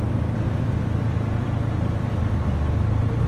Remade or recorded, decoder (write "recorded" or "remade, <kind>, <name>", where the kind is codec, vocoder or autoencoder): recorded